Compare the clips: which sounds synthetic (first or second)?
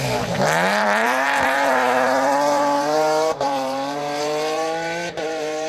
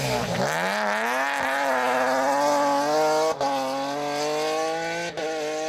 first